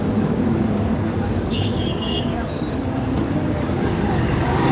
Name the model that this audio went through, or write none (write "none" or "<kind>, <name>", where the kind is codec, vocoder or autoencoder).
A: codec, DAC